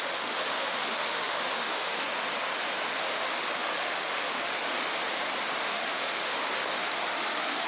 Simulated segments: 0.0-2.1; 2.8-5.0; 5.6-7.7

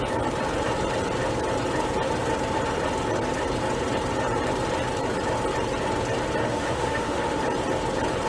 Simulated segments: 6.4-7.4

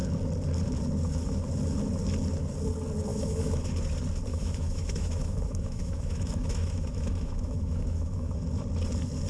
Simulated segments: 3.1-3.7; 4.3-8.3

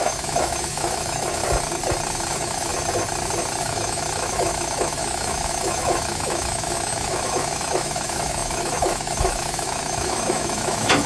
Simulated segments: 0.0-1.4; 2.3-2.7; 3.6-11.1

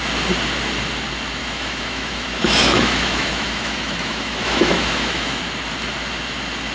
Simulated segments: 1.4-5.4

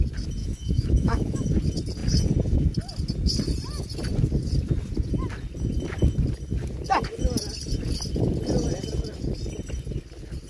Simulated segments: 0.4-1.5

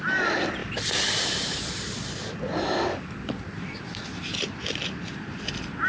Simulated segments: none

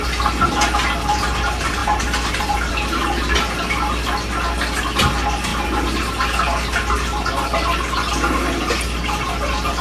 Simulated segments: none